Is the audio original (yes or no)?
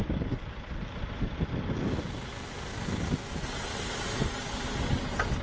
yes